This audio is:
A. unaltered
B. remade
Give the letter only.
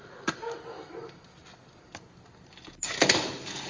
A